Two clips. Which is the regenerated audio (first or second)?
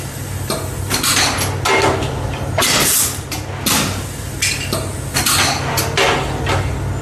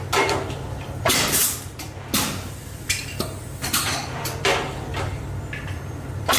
second